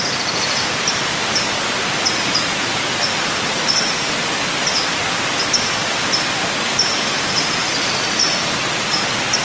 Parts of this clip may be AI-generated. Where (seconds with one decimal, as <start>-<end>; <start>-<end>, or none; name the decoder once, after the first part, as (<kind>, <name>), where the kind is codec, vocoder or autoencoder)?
6.9-7.9 (vocoder, BigVGAN v2)